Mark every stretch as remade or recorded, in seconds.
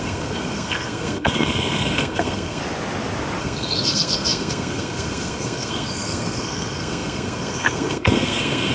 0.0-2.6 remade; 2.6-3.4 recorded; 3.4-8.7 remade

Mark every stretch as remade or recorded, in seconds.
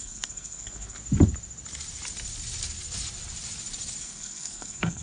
0.0-1.0 remade; 1.0-4.0 recorded; 4.0-5.0 remade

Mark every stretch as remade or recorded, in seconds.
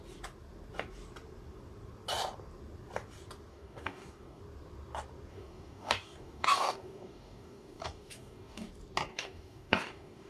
0.0-3.5 recorded; 3.5-4.4 remade; 4.4-5.3 recorded; 5.3-8.7 remade; 8.7-9.1 recorded; 9.1-10.3 remade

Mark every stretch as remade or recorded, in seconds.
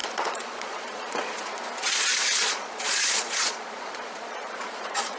0.0-1.4 remade; 1.4-1.8 recorded; 1.8-5.2 remade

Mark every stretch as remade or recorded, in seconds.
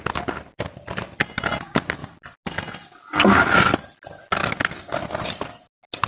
0.0-6.1 recorded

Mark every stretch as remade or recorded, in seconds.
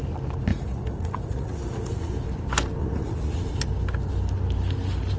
0.0-0.5 recorded; 0.5-2.1 remade; 2.1-2.8 recorded; 2.8-3.5 remade; 3.5-5.2 recorded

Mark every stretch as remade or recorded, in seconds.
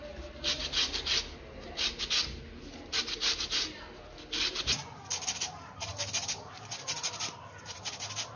0.0-5.9 recorded; 5.9-6.6 remade; 6.6-8.4 recorded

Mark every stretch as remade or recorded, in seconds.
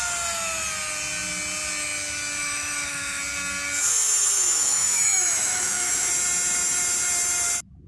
0.0-2.4 recorded; 2.4-3.2 remade; 3.2-3.9 recorded; 3.9-6.1 remade; 6.1-7.9 recorded